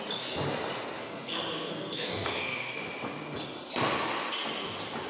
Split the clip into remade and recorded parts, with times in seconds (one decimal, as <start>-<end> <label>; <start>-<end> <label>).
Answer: 0.0-1.0 recorded; 1.0-2.7 remade; 2.7-5.1 recorded